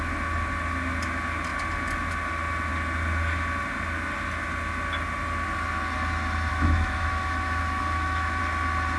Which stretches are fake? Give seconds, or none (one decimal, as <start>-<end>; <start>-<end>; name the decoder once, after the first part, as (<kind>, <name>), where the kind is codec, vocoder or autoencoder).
6.5-8.4 (autoencoder, DAC-VAE)